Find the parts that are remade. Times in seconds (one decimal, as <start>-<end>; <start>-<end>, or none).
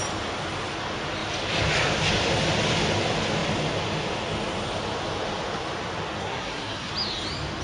6.2-6.9